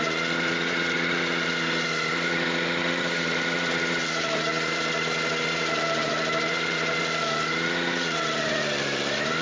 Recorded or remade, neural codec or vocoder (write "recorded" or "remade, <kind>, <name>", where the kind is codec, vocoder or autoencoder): remade, vocoder, BigVGAN v2